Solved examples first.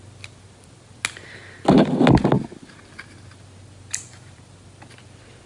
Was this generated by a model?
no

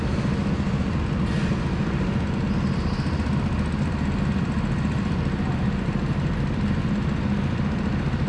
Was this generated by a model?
no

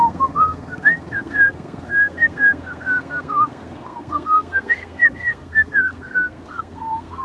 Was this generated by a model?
yes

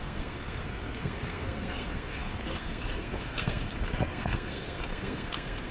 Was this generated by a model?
yes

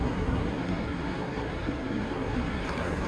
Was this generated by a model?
yes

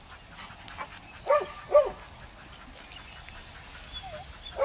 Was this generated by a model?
no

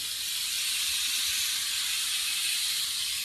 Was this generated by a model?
no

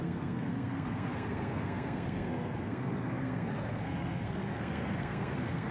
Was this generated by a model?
yes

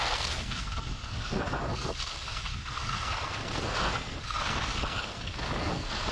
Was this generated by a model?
yes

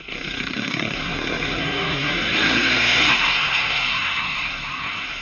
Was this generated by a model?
yes